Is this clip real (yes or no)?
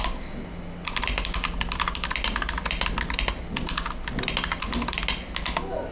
yes